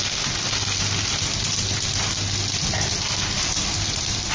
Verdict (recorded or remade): recorded